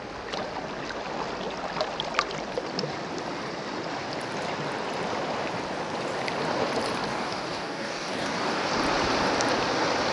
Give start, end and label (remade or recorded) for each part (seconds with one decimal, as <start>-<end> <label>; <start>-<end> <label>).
0.0-7.1 recorded; 7.1-8.7 remade; 8.7-10.1 recorded